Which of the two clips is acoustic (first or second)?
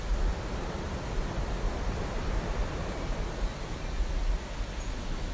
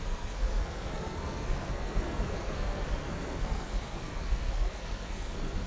first